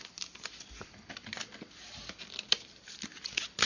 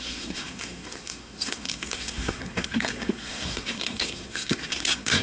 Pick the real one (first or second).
first